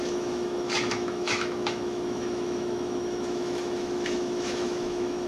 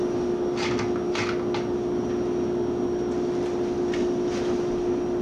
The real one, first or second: second